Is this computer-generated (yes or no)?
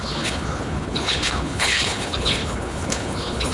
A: yes